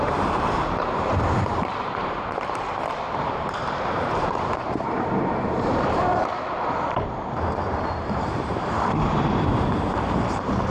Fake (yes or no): yes